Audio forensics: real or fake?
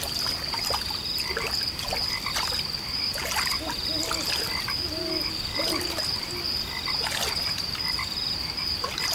real